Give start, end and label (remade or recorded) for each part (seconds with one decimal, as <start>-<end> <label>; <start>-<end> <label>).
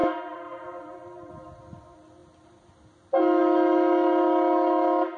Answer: 0.0-1.3 remade; 1.3-5.2 recorded